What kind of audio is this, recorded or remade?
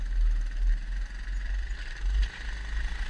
recorded